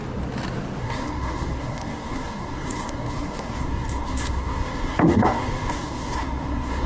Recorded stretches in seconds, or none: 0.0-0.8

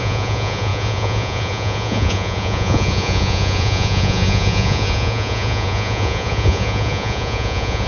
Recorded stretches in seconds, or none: none